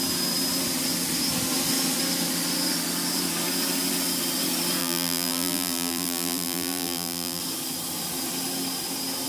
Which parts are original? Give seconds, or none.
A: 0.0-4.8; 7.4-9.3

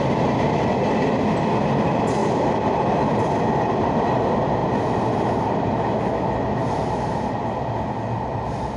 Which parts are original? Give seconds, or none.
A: 0.0-2.2; 3.3-4.6; 6.1-6.8; 7.4-8.8

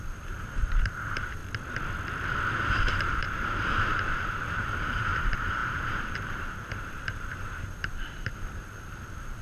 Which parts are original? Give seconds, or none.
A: 1.4-2.5

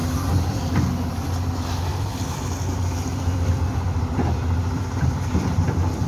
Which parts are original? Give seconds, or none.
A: 0.6-1.9; 5.6-6.1

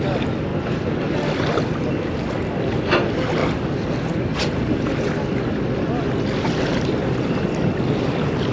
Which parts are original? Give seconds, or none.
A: 0.0-8.5

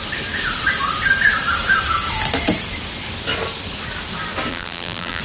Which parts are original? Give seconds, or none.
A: 0.0-4.5

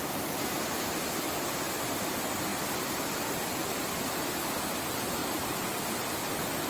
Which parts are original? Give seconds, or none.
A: 0.0-6.7